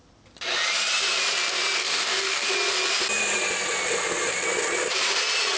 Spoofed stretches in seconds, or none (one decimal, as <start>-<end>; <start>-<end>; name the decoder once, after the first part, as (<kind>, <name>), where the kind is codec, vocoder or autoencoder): 1.8-2.5 (codec, DAC)

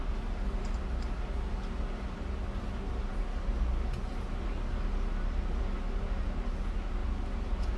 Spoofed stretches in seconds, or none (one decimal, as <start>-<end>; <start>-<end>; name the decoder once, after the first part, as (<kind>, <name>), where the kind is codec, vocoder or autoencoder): none

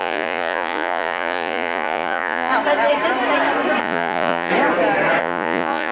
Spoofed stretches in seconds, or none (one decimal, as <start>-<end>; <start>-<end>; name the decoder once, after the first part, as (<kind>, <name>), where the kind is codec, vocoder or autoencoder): 0.0-2.5 (vocoder, Vocos); 3.8-4.5; 5.2-5.9

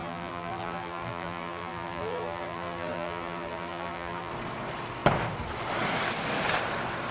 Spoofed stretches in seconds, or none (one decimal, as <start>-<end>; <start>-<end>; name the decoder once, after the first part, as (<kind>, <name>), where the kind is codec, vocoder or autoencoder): 0.0-4.3 (vocoder, BigVGAN v2)

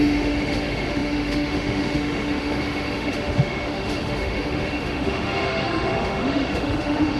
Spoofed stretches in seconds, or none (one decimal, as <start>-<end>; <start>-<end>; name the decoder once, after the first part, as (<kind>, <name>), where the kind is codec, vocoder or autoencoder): 0.0-7.2 (autoencoder, DAC-VAE)

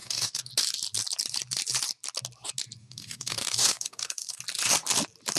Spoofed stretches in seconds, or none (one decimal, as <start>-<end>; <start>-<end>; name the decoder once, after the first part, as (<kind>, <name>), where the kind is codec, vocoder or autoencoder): 0.0-0.5 (codec, DAC); 2.8-4.4

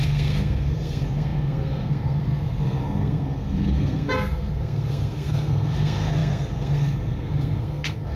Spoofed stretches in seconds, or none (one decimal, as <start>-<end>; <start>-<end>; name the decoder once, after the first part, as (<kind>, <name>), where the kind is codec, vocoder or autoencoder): 0.0-8.2 (codec, SNAC)

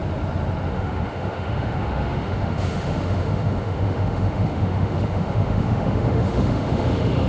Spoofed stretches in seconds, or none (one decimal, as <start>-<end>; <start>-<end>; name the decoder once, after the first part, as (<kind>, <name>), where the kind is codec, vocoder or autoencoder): 0.7-7.3 (autoencoder, DAC-VAE)